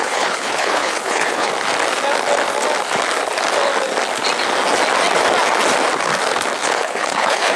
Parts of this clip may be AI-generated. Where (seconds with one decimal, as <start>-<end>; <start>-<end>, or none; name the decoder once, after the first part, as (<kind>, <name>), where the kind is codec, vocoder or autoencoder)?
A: 0.0-1.5 (codec, HILCodec); 6.6-7.6